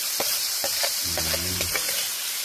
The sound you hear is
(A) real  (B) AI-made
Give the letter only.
B